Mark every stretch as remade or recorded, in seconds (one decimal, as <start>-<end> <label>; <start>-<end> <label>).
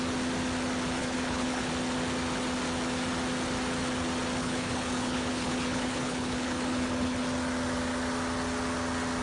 0.0-1.0 recorded; 1.0-1.7 remade; 1.7-4.4 recorded; 4.4-7.2 remade; 7.2-9.2 recorded